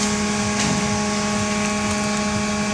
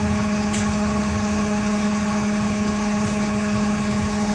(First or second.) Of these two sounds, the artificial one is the second